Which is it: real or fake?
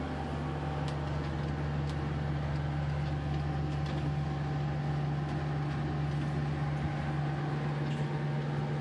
real